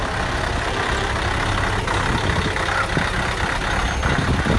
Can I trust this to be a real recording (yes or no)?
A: yes